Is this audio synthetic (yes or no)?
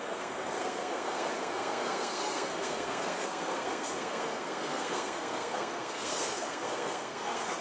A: yes